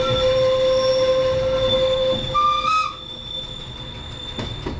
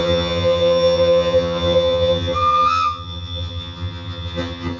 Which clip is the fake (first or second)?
second